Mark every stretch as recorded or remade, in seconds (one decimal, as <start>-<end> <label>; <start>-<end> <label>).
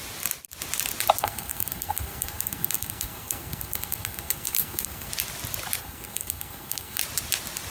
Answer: 0.0-1.2 recorded; 1.2-5.1 remade; 5.1-5.8 recorded; 5.8-7.0 remade; 7.0-7.7 recorded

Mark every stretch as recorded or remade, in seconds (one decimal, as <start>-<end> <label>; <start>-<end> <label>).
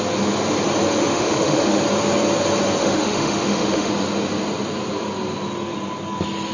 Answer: 0.0-1.1 recorded; 1.1-1.8 remade; 1.8-2.8 recorded; 2.8-3.9 remade; 3.9-6.5 recorded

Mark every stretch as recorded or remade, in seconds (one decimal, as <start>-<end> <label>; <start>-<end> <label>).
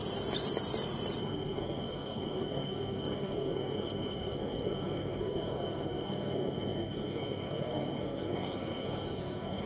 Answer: 0.0-1.2 recorded; 1.2-9.7 remade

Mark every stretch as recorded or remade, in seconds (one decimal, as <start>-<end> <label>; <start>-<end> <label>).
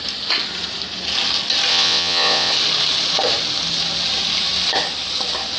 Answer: 0.0-1.7 recorded; 1.7-2.5 remade; 2.5-5.6 recorded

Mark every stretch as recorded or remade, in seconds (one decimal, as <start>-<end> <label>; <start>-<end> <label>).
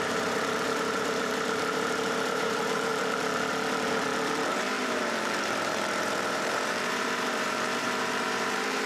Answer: 0.0-2.9 remade; 2.9-4.5 recorded; 4.5-8.9 remade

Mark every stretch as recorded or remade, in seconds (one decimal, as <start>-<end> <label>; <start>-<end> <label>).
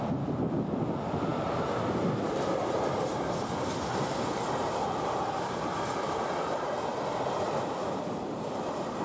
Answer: 0.0-9.0 recorded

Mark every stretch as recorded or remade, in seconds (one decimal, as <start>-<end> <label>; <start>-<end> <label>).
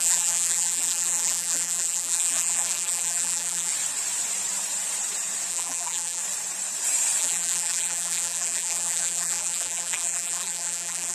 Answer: 0.0-3.7 remade; 3.7-5.5 recorded; 5.5-6.2 remade; 6.2-7.2 recorded; 7.2-11.1 remade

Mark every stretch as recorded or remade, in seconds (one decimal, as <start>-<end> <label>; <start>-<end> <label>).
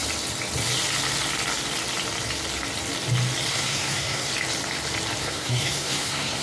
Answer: 0.0-3.5 recorded; 3.5-4.3 remade; 4.3-5.2 recorded; 5.2-6.4 remade